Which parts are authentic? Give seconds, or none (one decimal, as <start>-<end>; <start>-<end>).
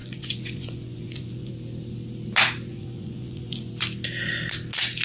1.5-2.7; 3.7-5.0